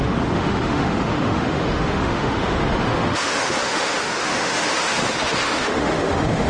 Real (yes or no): no